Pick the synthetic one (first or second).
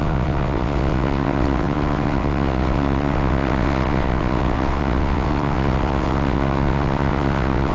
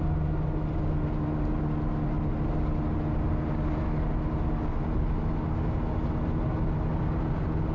first